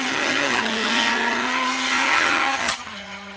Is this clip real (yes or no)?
no